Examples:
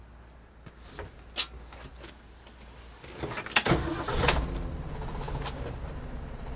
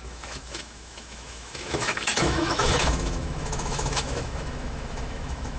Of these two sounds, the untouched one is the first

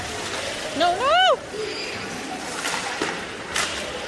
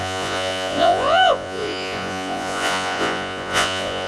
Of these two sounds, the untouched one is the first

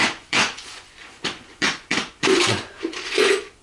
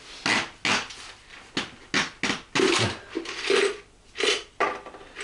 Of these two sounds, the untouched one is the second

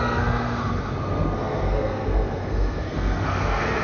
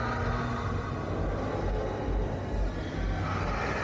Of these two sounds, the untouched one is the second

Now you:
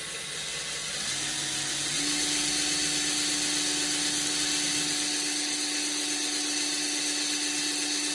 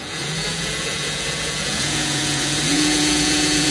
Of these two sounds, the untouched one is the first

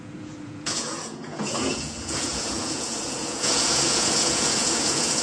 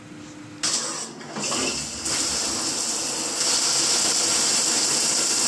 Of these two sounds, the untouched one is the second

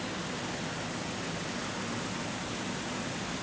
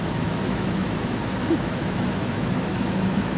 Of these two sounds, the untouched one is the first